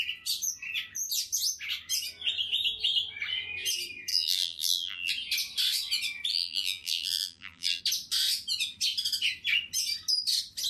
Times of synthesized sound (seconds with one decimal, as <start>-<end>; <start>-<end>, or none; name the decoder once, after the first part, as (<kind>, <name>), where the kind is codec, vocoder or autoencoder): 4.1-5.1 (vocoder, BigVGAN v2); 6.3-7.8